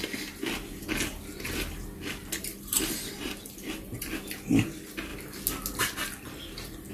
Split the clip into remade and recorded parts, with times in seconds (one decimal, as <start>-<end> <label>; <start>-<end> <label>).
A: 0.0-2.5 recorded; 2.5-3.6 remade; 3.6-6.9 recorded